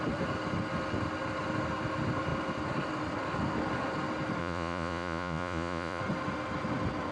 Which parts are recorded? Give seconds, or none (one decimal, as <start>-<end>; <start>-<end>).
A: 0.0-4.4; 6.0-7.1